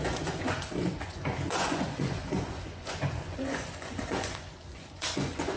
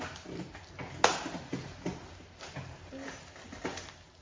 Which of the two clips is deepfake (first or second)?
first